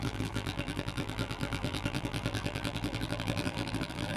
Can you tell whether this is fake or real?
fake